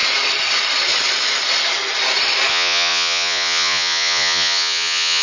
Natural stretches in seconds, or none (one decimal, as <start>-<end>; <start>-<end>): 0.0-2.5